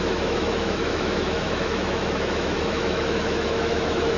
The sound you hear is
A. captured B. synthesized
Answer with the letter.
B